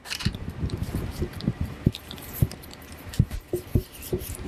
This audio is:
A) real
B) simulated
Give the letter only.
B